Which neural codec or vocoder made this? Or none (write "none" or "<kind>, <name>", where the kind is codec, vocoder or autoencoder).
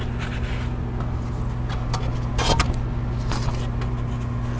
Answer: none